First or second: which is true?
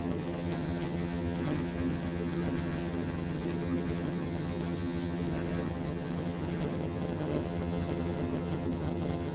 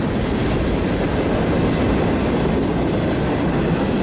second